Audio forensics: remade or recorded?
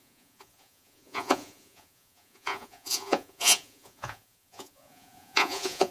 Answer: remade